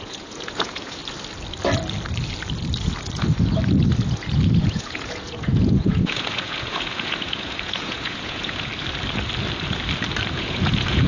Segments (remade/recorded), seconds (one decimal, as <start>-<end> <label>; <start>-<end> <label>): 0.0-1.0 remade; 1.0-4.6 recorded; 4.6-8.7 remade; 8.7-10.3 recorded; 10.3-11.1 remade